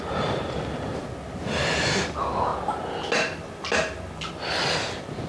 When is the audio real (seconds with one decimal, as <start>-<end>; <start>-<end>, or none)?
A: 0.0-5.3